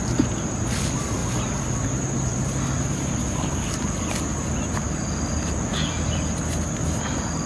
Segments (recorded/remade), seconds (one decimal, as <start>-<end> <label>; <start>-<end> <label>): 0.0-7.5 recorded